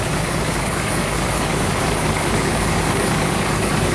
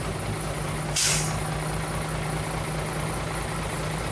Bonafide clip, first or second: second